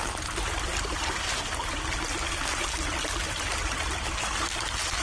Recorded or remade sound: recorded